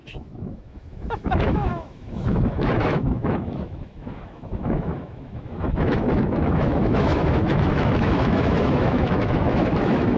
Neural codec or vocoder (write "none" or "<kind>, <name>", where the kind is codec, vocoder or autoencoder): autoencoder, DAC-VAE